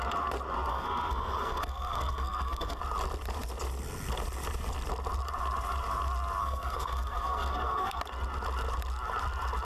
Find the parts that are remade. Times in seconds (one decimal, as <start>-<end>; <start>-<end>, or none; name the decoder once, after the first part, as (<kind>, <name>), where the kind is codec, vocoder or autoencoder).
0.7-2.8 (codec, SNAC); 6.4-8.0